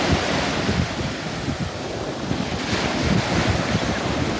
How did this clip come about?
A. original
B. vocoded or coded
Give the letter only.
A